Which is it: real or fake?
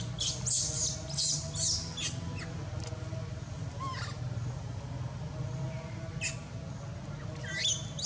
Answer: real